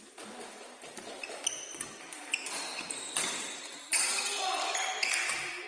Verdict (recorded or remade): recorded